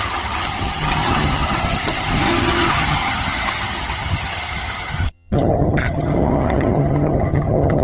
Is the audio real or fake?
fake